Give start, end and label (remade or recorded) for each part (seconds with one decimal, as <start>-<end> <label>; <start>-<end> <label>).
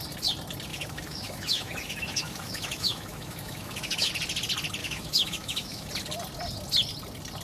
0.0-0.7 recorded; 0.7-4.1 remade; 4.1-4.8 recorded; 4.8-5.9 remade; 5.9-7.4 recorded